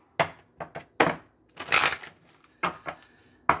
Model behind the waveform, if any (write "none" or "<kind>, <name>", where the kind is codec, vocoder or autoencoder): none